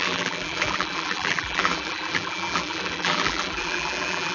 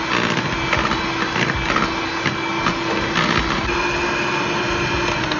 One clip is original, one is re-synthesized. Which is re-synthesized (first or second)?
first